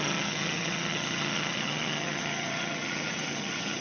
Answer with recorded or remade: remade